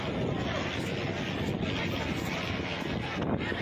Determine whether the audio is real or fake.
real